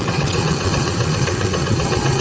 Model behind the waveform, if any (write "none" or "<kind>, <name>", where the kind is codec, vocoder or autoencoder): vocoder, WaveNeXt